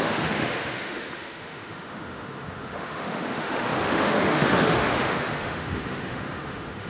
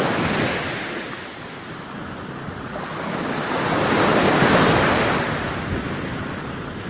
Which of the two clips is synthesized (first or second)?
first